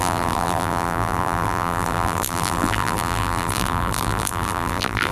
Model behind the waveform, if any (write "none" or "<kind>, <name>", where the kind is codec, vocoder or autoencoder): vocoder, BigVGAN v2